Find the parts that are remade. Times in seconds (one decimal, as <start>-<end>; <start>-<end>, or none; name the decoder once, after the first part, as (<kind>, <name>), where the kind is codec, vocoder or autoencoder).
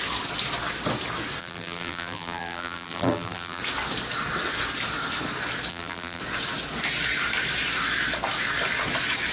1.4-3.6 (vocoder, BigVGAN v2); 5.7-6.2